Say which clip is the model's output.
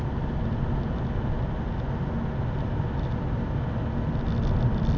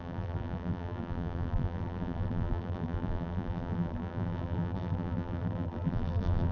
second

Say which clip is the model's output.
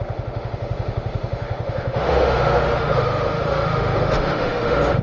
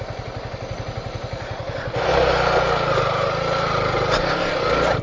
first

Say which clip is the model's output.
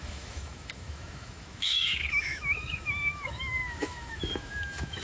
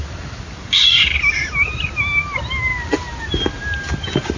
first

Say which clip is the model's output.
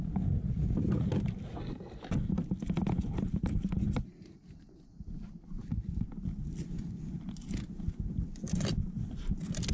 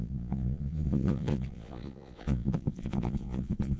second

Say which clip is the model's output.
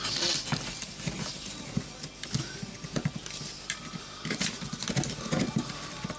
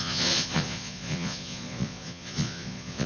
second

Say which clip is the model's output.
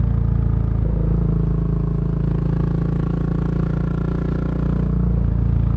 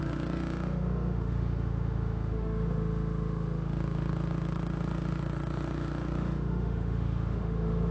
second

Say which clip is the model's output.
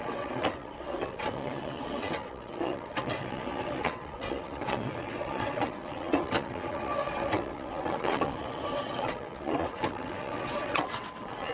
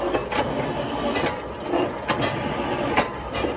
first